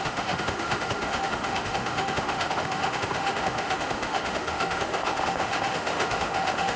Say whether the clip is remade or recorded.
remade